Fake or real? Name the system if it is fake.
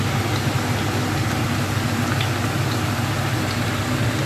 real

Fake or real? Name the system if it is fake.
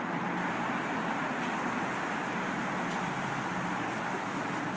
real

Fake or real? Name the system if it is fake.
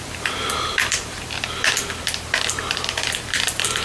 fake, vocoder, BigVGAN v2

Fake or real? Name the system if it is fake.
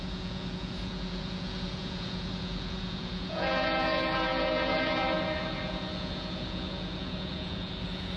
fake, vocoder, Vocos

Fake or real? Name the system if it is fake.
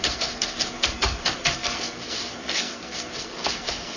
fake, codec, SNAC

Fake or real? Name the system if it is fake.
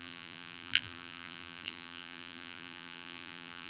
fake, vocoder, BigVGAN v2